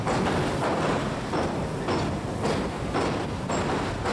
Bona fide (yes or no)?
yes